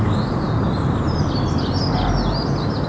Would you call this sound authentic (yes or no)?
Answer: yes